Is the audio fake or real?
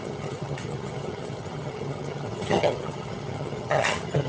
fake